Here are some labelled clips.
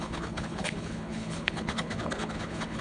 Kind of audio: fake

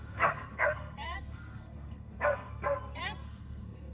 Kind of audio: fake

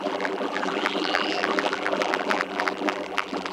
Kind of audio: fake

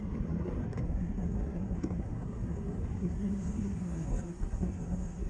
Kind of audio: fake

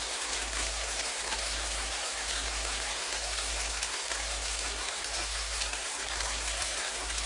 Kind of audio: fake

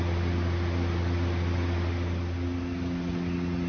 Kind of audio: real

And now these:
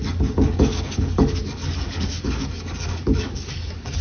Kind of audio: fake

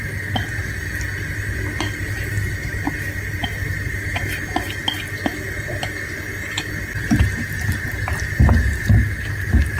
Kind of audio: real